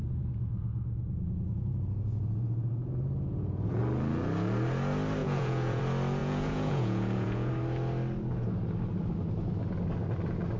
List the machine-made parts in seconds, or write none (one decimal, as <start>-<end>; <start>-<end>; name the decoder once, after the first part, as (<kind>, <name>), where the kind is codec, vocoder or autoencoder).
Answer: 0.0-3.8 (vocoder, Vocos); 5.2-5.8; 6.2-7.5